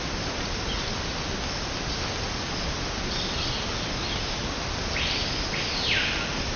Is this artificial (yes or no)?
no